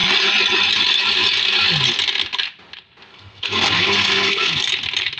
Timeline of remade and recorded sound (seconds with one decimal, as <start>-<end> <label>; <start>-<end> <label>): 0.0-3.1 recorded; 3.1-4.7 remade; 4.7-5.2 recorded